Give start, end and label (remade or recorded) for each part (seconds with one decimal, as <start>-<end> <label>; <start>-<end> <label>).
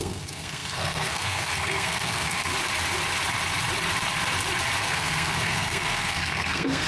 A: 0.0-2.5 remade; 2.5-4.8 recorded; 4.8-6.9 remade